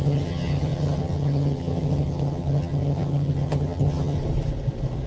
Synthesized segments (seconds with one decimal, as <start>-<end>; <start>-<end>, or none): 0.0-4.2